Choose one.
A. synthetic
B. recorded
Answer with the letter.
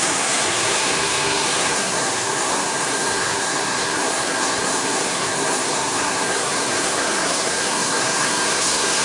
A